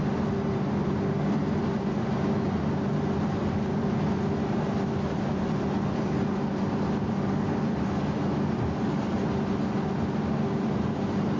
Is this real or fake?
real